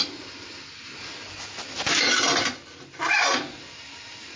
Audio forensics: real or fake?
real